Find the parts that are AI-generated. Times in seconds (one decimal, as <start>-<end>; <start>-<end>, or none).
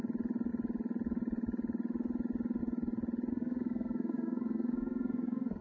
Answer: 3.3-5.6